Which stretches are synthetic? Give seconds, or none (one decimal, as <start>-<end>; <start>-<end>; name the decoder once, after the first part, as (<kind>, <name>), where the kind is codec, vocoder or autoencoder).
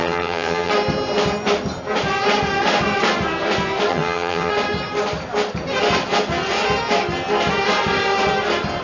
0.0-0.7 (vocoder, HiFi-GAN); 3.9-4.5